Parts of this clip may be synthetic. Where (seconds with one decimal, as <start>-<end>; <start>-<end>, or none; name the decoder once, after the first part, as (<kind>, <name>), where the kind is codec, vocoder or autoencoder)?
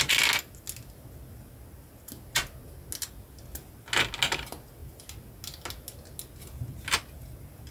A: none